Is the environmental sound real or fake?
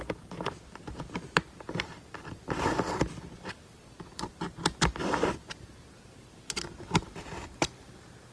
fake